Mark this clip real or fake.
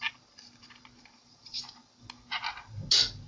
real